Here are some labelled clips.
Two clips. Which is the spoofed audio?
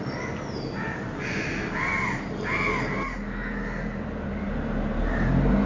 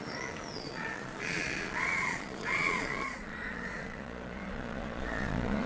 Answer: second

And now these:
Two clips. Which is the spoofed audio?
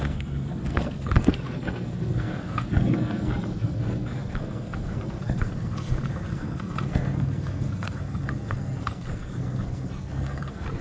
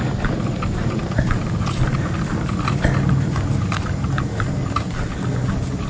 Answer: first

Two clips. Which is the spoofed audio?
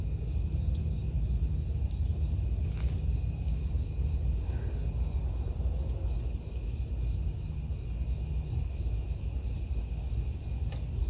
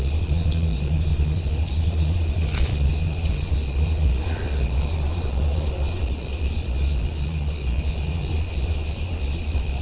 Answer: second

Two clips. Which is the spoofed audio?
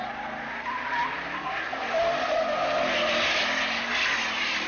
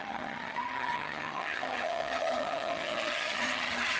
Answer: second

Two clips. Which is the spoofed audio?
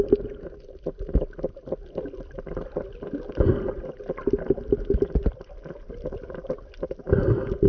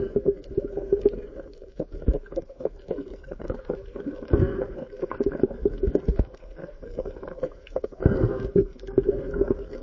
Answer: second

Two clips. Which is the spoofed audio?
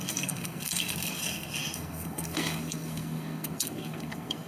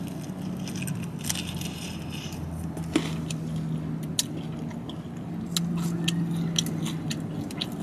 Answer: first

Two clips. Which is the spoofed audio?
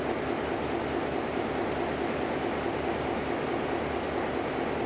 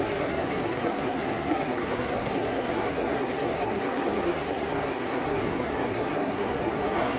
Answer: second